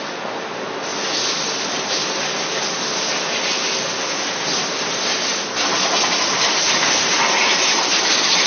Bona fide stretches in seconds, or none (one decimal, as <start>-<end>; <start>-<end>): 0.0-8.5